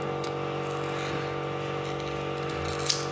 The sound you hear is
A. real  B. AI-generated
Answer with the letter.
A